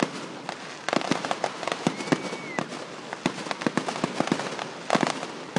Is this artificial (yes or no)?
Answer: no